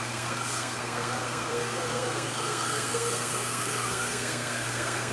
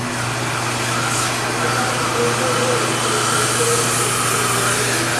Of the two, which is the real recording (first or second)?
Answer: second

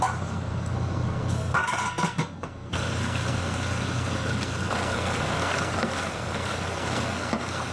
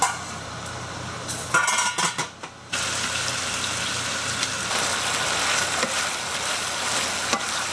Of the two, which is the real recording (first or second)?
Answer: second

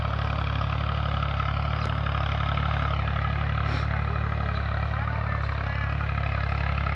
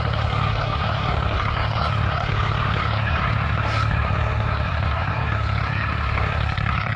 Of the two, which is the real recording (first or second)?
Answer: first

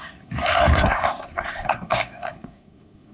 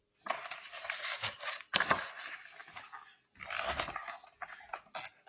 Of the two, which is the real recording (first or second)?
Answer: second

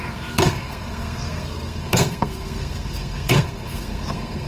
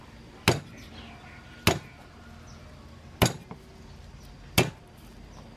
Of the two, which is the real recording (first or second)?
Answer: second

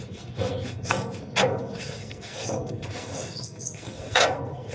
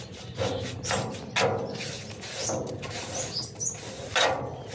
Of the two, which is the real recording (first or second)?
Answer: second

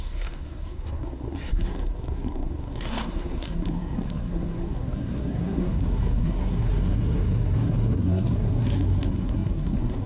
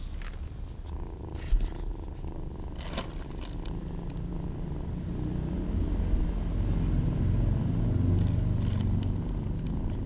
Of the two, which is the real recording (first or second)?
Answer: second